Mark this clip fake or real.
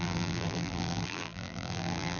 fake